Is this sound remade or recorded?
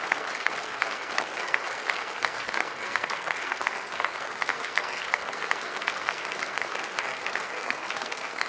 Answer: remade